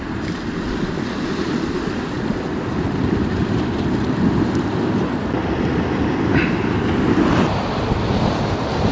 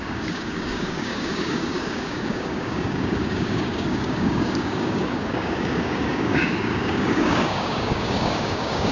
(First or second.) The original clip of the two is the first